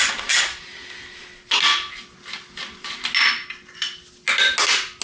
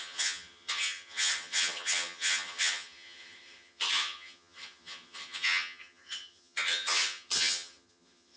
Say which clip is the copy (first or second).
second